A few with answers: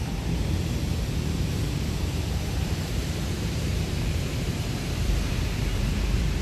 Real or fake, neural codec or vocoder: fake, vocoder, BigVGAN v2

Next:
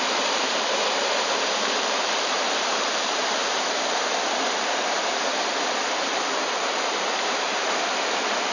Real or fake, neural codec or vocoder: fake, vocoder, BigVGAN v2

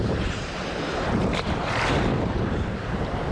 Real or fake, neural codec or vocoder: fake, vocoder, BigVGAN v2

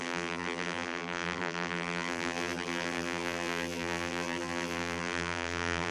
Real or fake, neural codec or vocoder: fake, vocoder, BigVGAN v2